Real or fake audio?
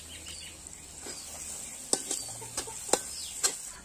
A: real